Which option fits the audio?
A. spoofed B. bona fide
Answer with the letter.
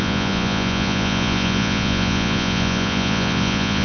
A